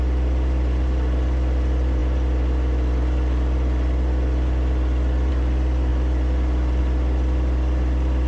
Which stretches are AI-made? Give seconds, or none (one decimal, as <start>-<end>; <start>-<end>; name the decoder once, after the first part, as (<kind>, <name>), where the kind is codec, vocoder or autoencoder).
none